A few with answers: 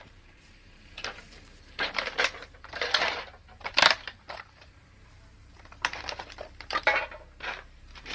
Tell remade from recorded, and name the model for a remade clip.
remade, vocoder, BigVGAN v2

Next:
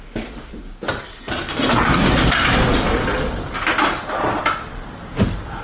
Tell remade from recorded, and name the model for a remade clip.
recorded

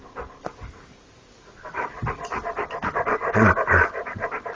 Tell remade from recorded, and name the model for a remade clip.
remade, vocoder, BigVGAN v2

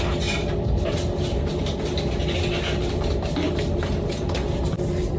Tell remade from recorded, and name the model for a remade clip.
recorded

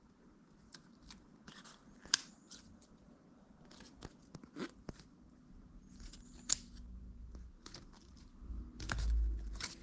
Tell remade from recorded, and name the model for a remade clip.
recorded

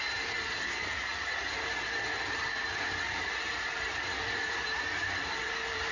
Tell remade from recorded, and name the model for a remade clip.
remade, vocoder, BigVGAN v2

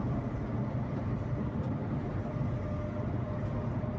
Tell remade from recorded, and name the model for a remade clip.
recorded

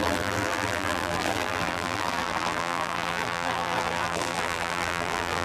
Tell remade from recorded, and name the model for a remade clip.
remade, vocoder, BigVGAN v2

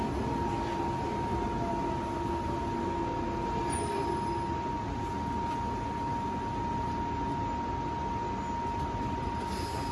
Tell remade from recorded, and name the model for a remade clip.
recorded